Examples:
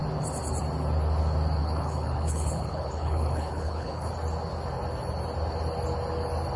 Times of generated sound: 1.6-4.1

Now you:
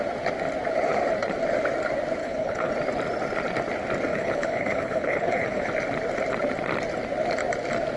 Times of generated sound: 2.2-2.7; 4.1-5.7

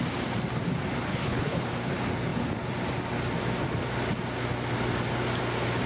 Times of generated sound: 1.1-1.7

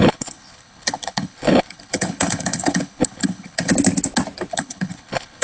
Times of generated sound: 0.0-3.7; 4.5-5.4

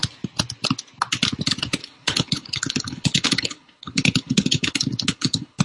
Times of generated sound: 1.8-5.6

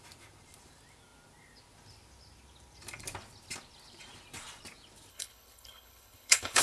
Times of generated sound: 5.1-6.6